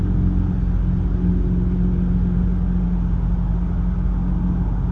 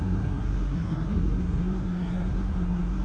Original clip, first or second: first